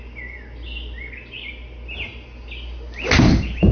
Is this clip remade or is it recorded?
recorded